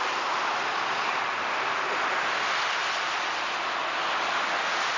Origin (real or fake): real